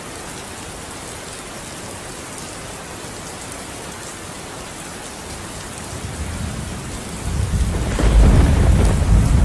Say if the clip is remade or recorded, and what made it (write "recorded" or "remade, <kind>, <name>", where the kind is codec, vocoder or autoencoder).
recorded